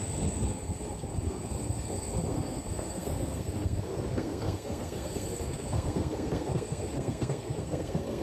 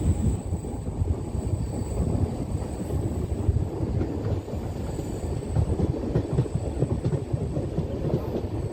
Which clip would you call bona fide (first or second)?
second